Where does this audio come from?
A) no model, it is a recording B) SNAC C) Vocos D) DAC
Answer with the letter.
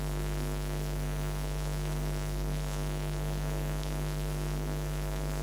B